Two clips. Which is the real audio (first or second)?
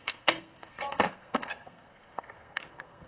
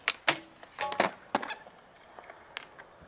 second